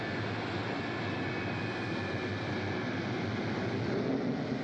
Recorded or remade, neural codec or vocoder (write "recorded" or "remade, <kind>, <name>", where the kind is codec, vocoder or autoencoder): recorded